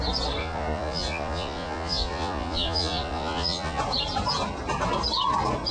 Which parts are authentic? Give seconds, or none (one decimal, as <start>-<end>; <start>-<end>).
0.0-0.4; 3.8-5.7